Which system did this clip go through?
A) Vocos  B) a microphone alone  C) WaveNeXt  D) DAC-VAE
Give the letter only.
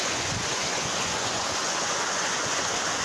A